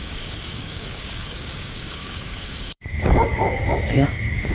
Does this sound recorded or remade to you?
remade